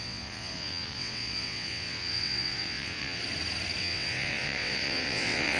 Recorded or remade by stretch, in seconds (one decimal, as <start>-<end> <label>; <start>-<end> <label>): 0.0-3.2 remade; 3.2-3.8 recorded; 3.8-5.6 remade